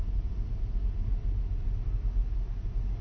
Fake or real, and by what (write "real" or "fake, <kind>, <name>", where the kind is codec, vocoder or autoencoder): real